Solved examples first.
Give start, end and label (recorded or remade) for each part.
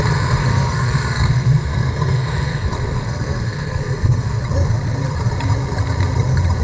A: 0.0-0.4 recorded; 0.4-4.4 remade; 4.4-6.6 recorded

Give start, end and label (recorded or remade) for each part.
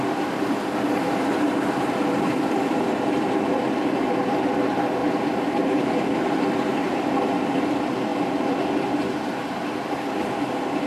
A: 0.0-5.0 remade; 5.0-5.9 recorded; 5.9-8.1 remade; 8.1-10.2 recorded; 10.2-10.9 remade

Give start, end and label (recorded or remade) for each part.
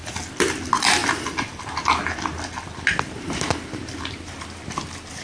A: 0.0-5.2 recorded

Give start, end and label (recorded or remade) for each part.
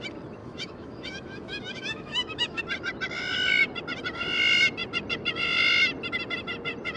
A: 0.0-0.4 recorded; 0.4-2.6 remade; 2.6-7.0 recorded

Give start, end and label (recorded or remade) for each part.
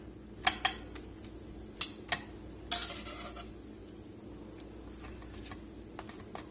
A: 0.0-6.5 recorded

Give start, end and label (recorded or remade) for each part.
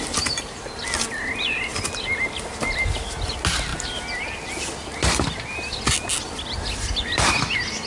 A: 0.0-7.9 recorded